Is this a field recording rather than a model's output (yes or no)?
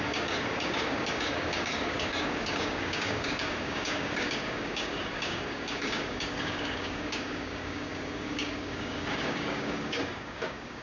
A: no